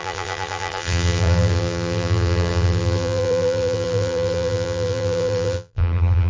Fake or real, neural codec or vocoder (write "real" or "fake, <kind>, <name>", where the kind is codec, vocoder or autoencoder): fake, vocoder, BigVGAN v2